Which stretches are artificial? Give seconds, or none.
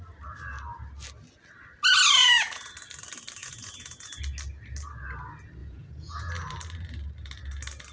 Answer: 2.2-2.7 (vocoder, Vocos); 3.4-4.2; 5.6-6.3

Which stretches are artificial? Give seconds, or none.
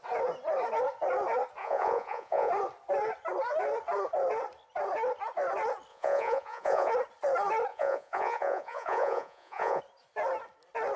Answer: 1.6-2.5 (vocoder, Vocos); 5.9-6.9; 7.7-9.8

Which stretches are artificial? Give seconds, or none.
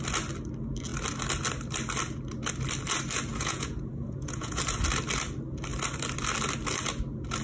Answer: 3.3-4.6 (vocoder, Vocos)